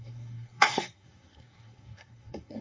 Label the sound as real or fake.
fake